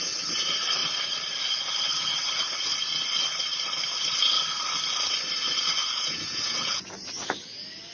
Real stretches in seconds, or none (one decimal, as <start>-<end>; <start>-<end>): 0.0-5.8; 6.8-7.9